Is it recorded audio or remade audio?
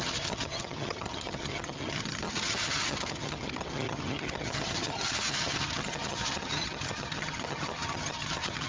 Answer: remade